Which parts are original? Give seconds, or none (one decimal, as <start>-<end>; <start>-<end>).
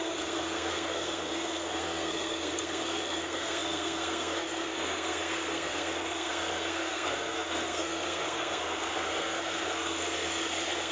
none